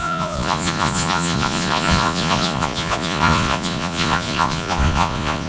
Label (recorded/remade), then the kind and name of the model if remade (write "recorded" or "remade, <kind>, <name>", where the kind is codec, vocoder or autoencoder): remade, vocoder, Vocos